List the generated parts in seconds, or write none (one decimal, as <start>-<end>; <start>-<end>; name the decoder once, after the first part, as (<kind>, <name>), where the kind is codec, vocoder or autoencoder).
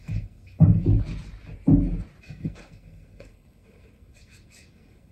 0.0-0.9 (codec, SNAC); 2.2-5.1